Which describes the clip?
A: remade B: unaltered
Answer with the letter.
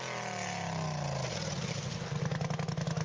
B